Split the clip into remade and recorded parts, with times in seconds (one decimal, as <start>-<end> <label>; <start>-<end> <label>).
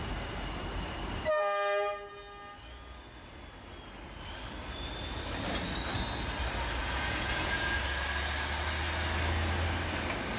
0.0-6.8 recorded; 6.8-7.8 remade; 7.8-10.4 recorded